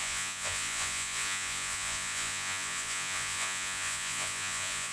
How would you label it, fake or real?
fake